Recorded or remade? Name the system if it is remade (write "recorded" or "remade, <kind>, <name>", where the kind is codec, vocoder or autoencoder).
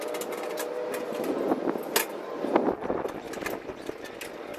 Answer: recorded